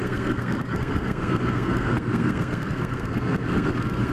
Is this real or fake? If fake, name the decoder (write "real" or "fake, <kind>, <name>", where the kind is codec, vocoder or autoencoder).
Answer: fake, codec, SNAC